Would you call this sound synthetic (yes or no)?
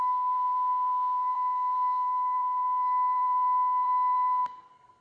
yes